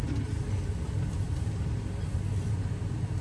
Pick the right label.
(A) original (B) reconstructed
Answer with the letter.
A